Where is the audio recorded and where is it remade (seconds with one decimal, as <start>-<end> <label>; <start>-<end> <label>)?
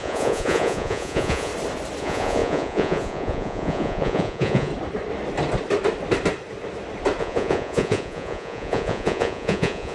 0.0-1.5 remade; 1.5-2.0 recorded; 2.0-4.7 remade; 4.7-7.2 recorded; 7.2-9.9 remade